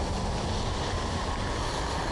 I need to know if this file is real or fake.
real